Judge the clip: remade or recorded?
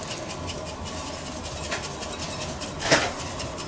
recorded